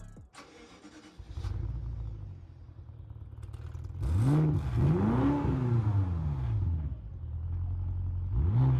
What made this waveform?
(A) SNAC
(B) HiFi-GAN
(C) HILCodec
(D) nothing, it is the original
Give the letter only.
D